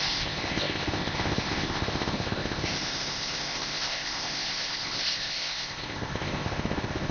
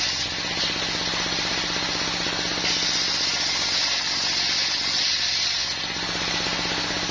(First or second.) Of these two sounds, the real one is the second